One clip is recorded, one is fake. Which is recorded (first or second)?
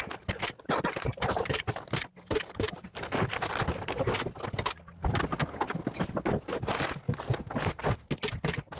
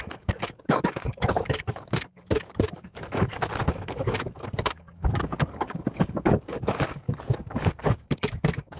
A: first